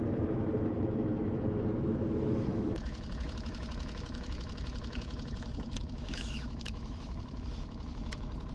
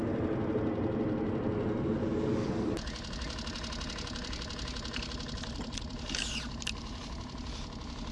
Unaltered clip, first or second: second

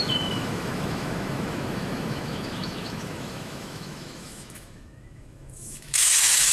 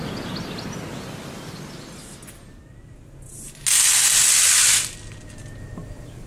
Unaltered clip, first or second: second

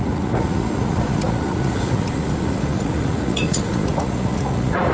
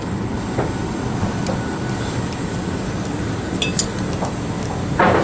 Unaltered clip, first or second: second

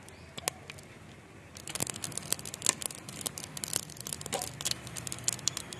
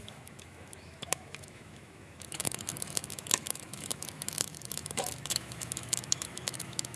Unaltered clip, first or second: first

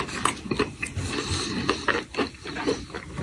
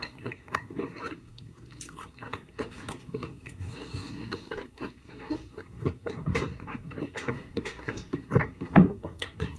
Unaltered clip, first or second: first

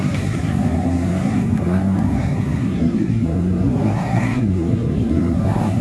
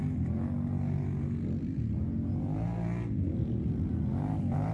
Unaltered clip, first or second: second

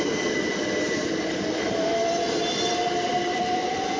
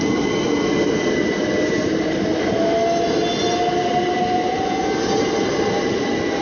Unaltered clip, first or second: second